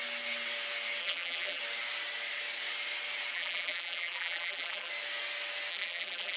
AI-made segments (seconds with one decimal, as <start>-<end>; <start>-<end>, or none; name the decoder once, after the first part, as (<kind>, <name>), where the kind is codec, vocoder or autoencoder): 1.0-1.6 (vocoder, BigVGAN v2); 3.3-4.9; 5.7-6.4